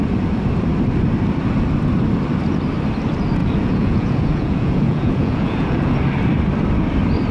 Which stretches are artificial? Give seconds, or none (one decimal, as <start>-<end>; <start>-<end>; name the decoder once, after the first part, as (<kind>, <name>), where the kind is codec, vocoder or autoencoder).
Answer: 3.4-6.0 (vocoder, Vocos)